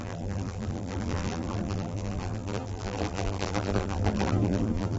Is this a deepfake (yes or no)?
yes